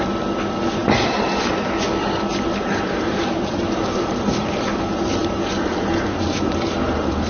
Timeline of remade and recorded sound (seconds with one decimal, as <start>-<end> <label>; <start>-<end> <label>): 0.0-0.8 recorded; 0.8-1.5 remade; 1.5-2.5 recorded; 2.5-7.3 remade